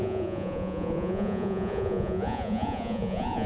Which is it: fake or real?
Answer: fake